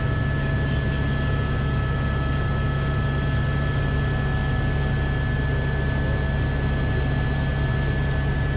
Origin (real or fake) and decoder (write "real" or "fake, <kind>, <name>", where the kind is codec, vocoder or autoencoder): real